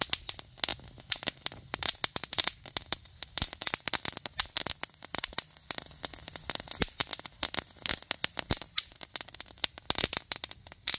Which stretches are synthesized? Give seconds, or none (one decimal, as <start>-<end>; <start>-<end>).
none